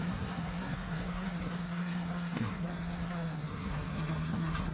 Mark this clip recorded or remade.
remade